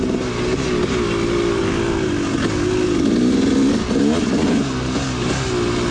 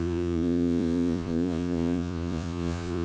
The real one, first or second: first